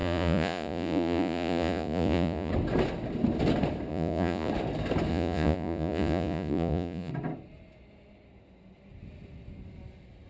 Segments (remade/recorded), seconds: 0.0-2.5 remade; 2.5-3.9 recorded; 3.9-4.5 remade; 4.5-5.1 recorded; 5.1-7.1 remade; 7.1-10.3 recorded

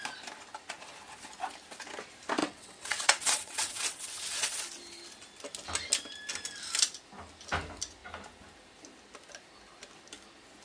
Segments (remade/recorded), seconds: 0.0-2.4 recorded; 2.4-4.6 remade; 4.6-10.6 recorded

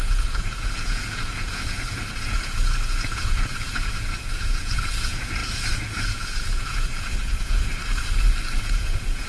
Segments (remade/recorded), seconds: 0.0-7.8 remade; 7.8-8.6 recorded; 8.6-9.3 remade